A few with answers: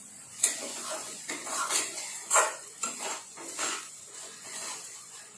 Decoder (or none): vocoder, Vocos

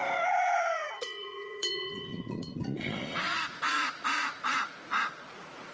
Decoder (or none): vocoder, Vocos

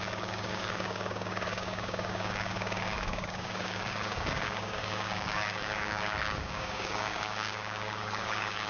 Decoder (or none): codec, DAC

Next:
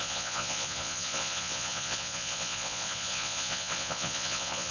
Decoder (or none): vocoder, Vocos